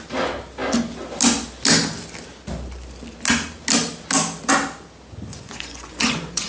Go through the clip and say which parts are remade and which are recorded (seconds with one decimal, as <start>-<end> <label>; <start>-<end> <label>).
0.0-5.3 recorded; 5.3-6.5 remade